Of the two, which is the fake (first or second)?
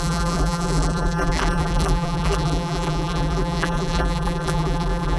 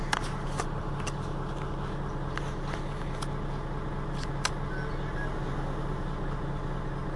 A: first